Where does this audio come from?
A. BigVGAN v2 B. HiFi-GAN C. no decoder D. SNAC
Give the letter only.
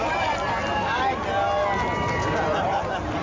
C